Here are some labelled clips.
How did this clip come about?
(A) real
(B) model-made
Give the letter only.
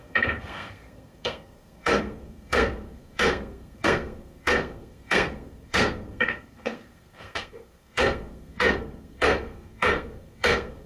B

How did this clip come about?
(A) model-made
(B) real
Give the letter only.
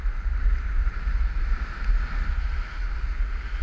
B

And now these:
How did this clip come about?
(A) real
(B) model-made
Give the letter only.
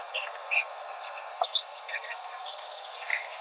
B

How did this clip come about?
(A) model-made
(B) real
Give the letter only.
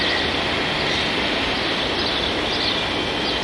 B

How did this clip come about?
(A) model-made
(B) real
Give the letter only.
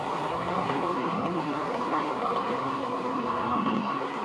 A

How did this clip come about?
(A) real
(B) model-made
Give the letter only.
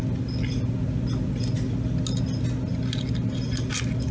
A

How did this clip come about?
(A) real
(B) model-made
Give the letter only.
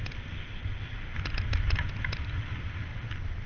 A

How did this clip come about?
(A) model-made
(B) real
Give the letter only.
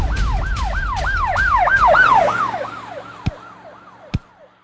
B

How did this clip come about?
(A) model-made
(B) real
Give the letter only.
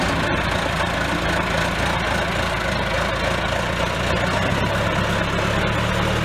B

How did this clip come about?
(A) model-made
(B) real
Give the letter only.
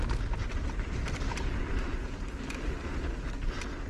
B